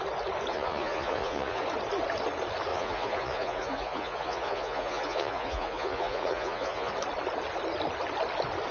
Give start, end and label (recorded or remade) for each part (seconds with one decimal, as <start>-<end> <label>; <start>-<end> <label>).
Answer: 0.0-0.5 recorded; 0.5-1.6 remade; 1.6-2.7 recorded; 2.7-6.9 remade; 6.9-8.7 recorded